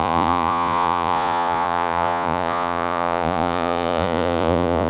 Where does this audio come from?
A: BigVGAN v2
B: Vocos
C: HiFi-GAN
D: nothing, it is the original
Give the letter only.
B